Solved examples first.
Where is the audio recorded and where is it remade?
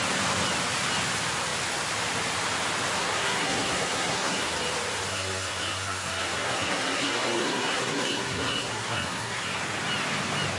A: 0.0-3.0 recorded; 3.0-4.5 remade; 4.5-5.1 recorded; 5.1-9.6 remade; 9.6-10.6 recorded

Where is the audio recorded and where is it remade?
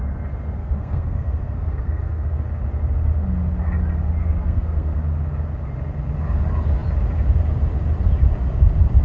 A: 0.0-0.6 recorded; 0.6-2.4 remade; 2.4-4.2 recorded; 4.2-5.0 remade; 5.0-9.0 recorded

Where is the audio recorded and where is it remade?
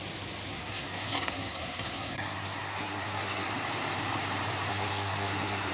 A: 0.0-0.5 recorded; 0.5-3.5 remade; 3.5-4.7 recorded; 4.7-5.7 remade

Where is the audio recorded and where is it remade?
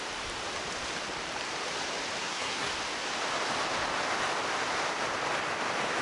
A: 0.0-2.2 recorded; 2.2-2.7 remade; 2.7-6.0 recorded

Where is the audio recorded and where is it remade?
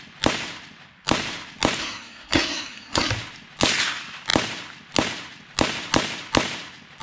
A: 0.0-1.8 recorded; 1.8-3.1 remade; 3.1-7.0 recorded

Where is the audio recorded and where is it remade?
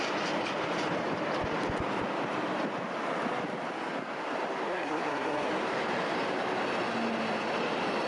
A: 0.0-4.7 recorded; 4.7-5.5 remade; 5.5-8.1 recorded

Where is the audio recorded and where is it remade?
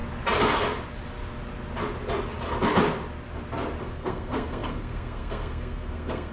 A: 0.0-3.8 recorded; 3.8-6.3 remade